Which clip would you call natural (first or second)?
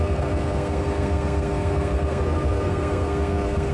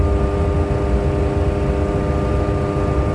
second